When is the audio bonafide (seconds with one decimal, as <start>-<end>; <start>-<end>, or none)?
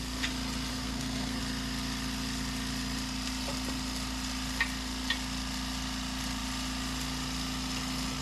0.0-0.7; 1.4-8.2